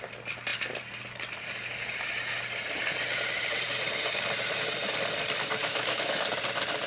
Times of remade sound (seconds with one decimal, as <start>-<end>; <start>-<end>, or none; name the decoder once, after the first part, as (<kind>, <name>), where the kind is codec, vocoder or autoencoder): 5.6-6.2 (autoencoder, DAC-VAE)